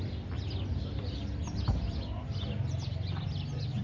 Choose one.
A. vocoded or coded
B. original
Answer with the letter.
B